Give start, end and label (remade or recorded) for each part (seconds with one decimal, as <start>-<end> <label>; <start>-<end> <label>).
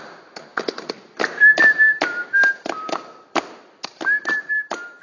0.0-5.0 recorded